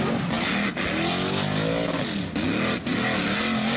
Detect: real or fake real